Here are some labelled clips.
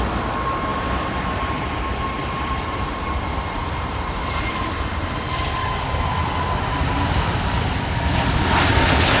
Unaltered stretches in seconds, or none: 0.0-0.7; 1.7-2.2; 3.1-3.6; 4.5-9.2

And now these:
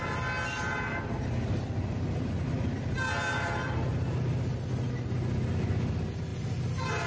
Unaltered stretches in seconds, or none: 0.0-7.1

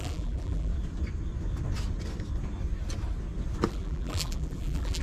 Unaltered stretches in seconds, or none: 0.7-3.7

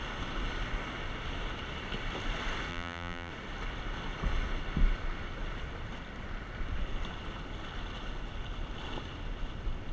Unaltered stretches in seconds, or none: 0.0-2.7; 3.3-9.9

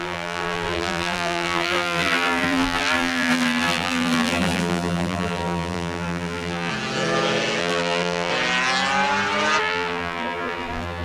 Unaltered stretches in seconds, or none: 6.7-7.6; 8.3-9.6